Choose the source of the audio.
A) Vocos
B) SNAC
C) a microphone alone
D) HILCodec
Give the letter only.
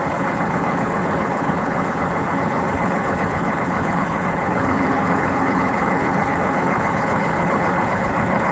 D